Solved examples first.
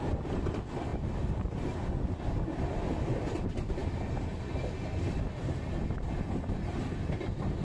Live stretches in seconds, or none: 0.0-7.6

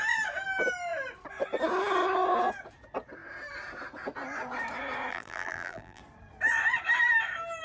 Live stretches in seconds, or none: 0.0-5.1; 6.0-7.6

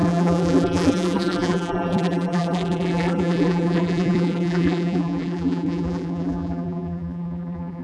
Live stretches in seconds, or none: none

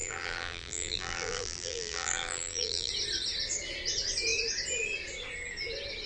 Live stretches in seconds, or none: 2.9-6.1

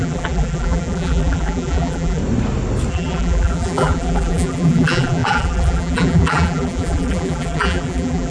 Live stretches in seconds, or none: 2.2-2.9

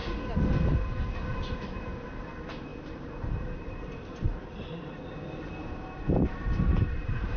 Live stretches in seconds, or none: 0.0-2.7; 5.0-5.6